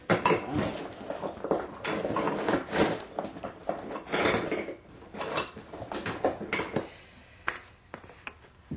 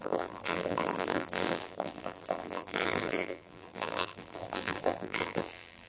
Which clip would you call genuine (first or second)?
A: first